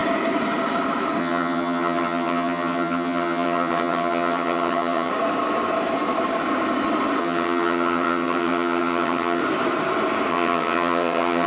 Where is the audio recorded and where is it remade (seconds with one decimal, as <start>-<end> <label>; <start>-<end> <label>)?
0.0-1.2 recorded; 1.2-5.1 remade; 5.1-7.2 recorded; 7.2-9.4 remade; 9.4-10.3 recorded; 10.3-11.5 remade